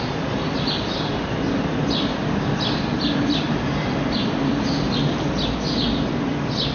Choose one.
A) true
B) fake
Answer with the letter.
A